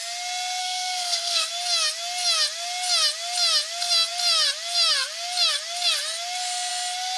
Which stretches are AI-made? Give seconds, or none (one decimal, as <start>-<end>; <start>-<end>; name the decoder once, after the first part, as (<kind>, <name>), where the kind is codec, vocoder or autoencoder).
0.6-1.5 (codec, SNAC)